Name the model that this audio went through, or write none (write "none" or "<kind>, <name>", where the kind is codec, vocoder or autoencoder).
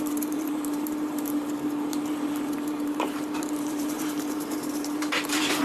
vocoder, BigVGAN v2